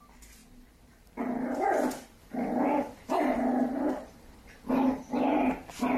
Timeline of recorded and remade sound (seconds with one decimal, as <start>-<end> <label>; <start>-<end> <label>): 0.0-6.0 recorded

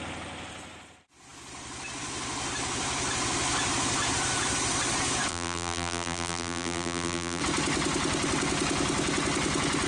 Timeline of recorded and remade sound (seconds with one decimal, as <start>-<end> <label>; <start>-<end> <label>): 0.0-5.3 recorded; 5.3-7.4 remade; 7.4-9.9 recorded

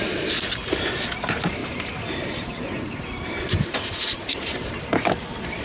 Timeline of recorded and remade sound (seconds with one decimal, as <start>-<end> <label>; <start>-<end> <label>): 0.0-1.6 recorded; 1.6-5.0 remade; 5.0-5.6 recorded

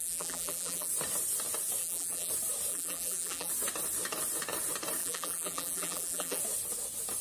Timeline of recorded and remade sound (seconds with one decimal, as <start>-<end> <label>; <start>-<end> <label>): 0.0-0.9 remade; 0.9-1.8 recorded; 1.8-2.3 remade; 2.3-2.7 recorded; 2.7-3.5 remade; 3.5-5.0 recorded; 5.0-6.4 remade; 6.4-7.2 recorded